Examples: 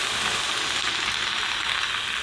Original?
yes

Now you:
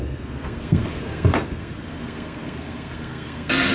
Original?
no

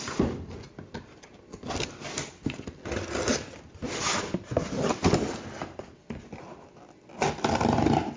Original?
yes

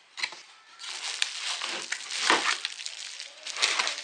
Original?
yes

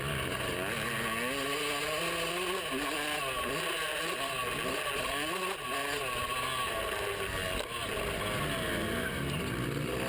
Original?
yes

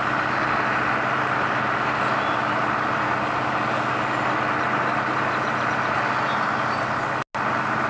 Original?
yes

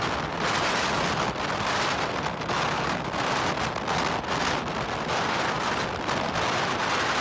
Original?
yes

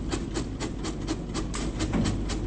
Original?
yes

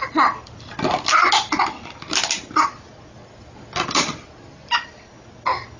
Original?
yes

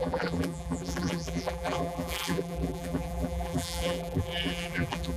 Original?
no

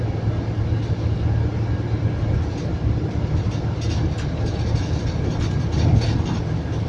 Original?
yes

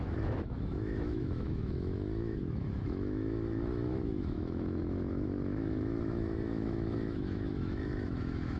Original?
no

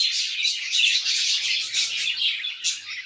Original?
yes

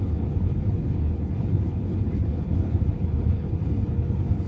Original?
no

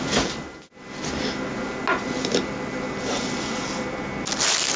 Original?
yes